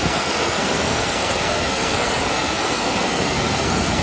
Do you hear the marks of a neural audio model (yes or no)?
yes